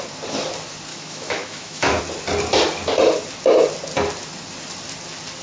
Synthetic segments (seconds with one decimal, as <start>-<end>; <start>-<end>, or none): 0.9-2.0